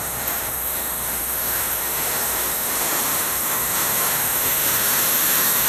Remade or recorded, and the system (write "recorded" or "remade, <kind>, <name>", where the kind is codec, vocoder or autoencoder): remade, autoencoder, DAC-VAE